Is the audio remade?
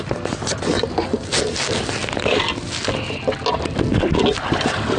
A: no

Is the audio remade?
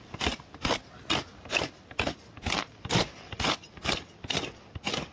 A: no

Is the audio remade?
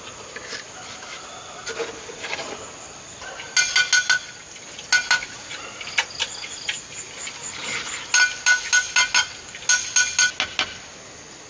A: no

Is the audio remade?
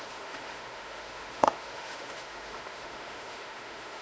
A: yes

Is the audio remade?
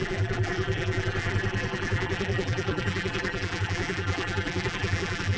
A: yes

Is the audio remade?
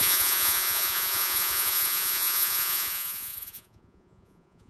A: yes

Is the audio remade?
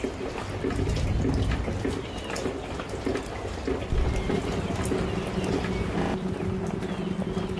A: no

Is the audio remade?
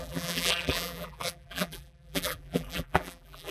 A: yes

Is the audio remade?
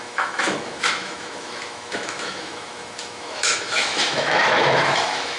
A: yes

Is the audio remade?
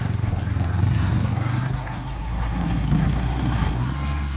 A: yes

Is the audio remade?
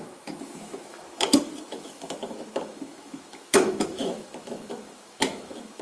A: yes